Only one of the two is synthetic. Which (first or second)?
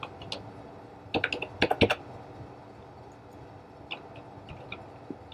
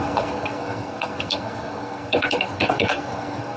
second